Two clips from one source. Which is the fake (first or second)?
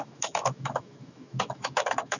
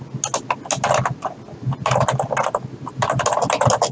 first